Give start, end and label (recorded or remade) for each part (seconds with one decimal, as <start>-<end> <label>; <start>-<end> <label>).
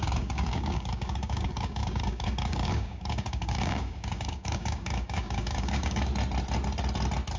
0.0-6.1 remade; 6.1-7.4 recorded